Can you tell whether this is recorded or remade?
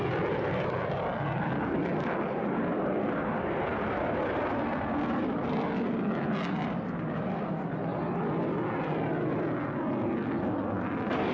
recorded